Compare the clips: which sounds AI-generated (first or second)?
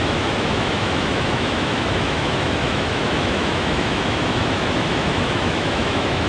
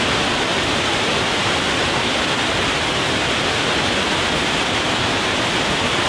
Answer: first